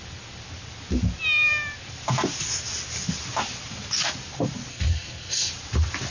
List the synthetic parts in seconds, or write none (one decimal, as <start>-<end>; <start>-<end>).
4.7-5.5